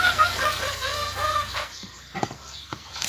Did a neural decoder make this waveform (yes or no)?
yes